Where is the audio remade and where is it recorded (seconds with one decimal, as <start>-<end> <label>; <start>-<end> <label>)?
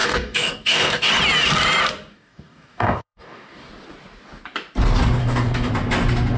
0.0-1.1 remade; 1.1-2.1 recorded; 2.1-3.7 remade; 3.7-5.2 recorded; 5.2-5.7 remade; 5.7-6.4 recorded